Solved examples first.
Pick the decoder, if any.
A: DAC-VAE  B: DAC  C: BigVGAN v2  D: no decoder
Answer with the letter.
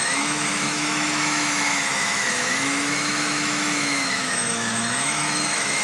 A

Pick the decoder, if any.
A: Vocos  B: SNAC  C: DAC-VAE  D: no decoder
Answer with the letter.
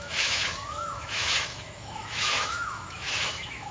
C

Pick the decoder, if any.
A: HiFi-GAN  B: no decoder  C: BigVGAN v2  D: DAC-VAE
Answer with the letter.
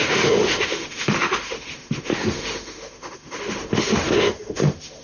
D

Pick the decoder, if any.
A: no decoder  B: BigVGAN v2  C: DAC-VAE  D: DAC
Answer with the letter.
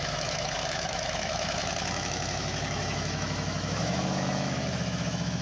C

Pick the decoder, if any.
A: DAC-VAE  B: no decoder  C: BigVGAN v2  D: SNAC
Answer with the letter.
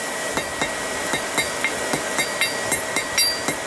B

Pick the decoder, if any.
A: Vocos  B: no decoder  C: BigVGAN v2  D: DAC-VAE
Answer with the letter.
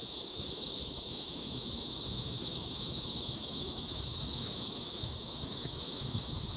D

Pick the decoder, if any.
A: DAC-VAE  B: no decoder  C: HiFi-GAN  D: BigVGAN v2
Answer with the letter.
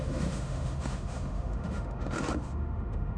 A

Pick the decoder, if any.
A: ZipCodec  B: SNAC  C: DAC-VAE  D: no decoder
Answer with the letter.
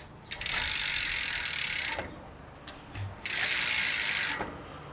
D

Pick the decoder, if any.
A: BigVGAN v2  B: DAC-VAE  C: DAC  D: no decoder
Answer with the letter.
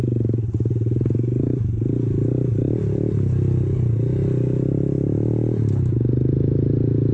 D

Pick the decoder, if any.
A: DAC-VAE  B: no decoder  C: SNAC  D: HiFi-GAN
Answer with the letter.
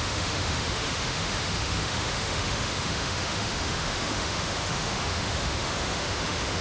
A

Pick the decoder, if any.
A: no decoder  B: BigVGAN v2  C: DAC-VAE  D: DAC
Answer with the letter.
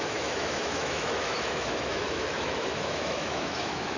C